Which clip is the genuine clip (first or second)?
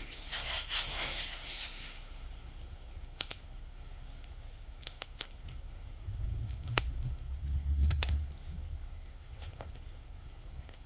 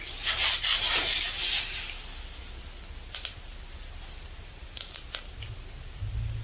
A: second